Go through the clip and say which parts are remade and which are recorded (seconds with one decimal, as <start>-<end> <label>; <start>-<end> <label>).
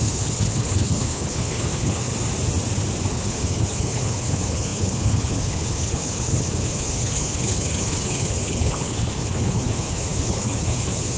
0.0-2.1 remade; 2.1-3.1 recorded; 3.1-11.2 remade